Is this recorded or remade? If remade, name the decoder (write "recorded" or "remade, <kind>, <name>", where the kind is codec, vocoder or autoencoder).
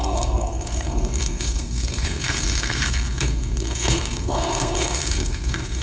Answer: remade, codec, SNAC